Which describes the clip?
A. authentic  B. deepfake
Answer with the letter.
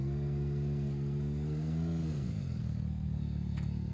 B